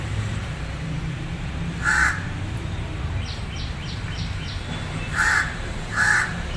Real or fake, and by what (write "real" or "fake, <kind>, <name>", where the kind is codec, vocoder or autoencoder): fake, vocoder, BigVGAN v2